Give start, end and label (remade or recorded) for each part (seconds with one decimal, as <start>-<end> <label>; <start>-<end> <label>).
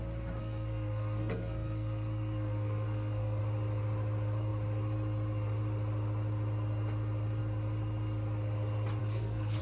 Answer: 0.0-0.4 recorded; 0.4-3.4 remade; 3.4-9.0 recorded; 9.0-9.6 remade